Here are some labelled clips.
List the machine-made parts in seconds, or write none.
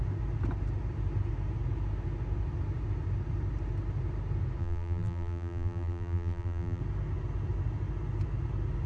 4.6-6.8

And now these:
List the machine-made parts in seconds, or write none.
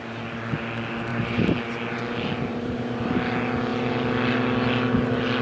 1.1-1.6; 2.5-3.1